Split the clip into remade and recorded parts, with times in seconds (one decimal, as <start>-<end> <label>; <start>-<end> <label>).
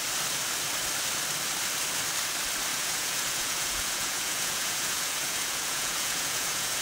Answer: 0.0-2.7 recorded; 2.7-6.8 remade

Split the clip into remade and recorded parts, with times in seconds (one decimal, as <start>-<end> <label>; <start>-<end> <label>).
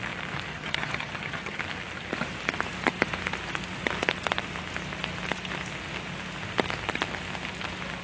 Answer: 0.0-0.5 recorded; 0.5-1.6 remade; 1.6-8.0 recorded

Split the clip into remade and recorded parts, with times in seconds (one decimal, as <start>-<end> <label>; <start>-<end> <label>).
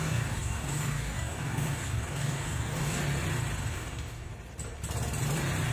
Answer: 0.0-3.0 remade; 3.0-3.7 recorded; 3.7-4.3 remade; 4.3-5.7 recorded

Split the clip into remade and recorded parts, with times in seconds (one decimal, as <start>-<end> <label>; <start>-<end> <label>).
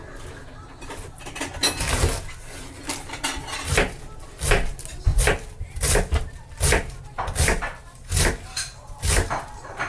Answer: 0.0-9.9 recorded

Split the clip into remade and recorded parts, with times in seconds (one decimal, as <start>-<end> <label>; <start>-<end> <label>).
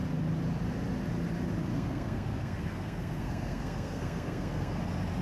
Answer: 0.0-1.7 recorded; 1.7-4.8 remade; 4.8-5.2 recorded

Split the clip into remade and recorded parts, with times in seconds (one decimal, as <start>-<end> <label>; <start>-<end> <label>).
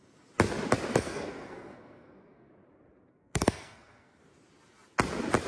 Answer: 0.0-0.9 recorded; 0.9-2.5 remade; 2.5-3.1 recorded; 3.1-4.2 remade; 4.2-5.5 recorded